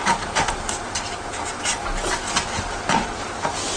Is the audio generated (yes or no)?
no